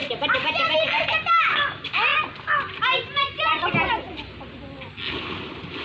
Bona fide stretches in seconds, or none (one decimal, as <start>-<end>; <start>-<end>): 0.0-5.8

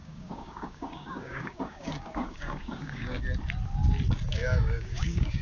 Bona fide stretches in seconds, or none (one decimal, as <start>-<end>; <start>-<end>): 3.2-4.3

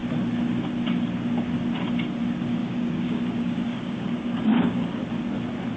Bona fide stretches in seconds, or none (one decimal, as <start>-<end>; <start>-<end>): 0.0-2.6; 5.0-5.8

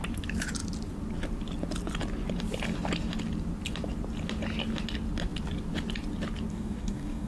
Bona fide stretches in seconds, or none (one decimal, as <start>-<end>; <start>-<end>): 0.0-6.5

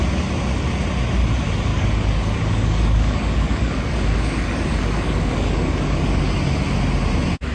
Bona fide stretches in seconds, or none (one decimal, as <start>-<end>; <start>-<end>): 0.0-1.7; 6.2-7.5